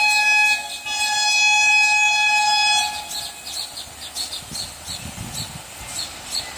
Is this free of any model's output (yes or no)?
yes